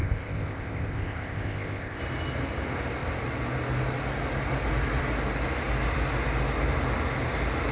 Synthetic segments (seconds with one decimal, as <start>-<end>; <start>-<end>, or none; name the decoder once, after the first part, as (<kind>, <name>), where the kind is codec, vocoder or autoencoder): 0.0-2.0 (codec, ZipCodec)